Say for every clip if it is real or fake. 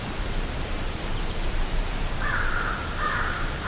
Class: fake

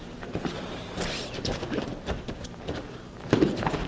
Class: fake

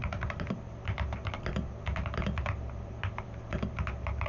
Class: fake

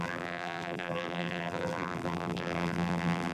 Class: fake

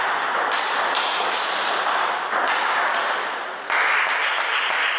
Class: real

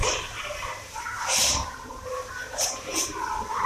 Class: fake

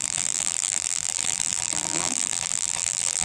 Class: fake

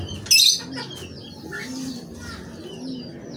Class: real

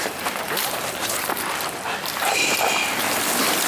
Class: fake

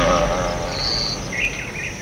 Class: real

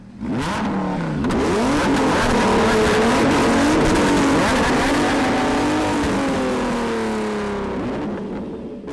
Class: real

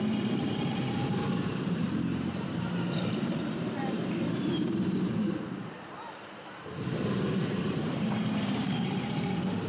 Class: fake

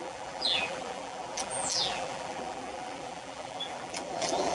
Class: fake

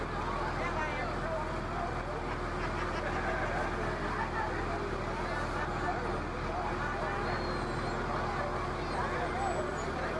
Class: real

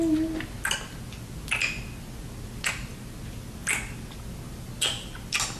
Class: real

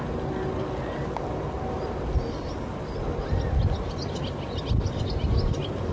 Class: real